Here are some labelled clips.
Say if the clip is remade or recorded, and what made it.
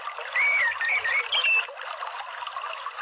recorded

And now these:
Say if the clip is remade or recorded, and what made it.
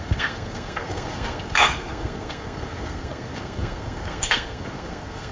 remade, codec, SNAC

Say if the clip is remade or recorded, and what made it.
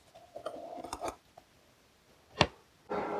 recorded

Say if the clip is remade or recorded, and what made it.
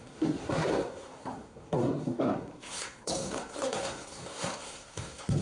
remade, codec, SNAC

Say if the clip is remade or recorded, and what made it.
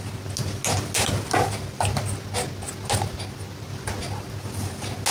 recorded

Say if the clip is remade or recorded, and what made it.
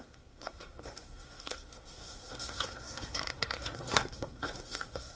remade, codec, SNAC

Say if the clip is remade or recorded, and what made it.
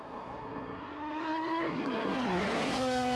remade, codec, SNAC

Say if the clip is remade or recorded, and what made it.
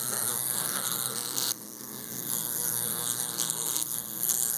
remade, codec, SNAC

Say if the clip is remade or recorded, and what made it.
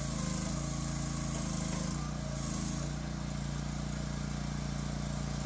recorded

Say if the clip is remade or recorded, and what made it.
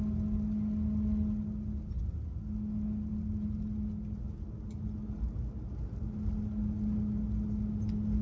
recorded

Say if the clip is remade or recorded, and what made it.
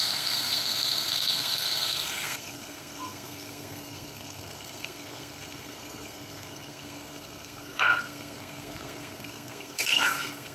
remade, codec, SNAC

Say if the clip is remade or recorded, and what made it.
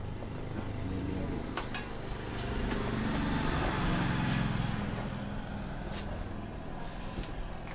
recorded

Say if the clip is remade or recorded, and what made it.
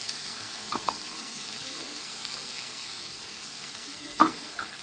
remade, codec, SNAC